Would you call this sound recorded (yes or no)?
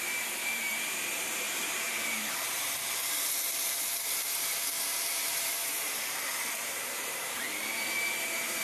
no